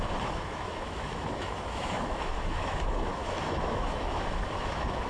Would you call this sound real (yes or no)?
no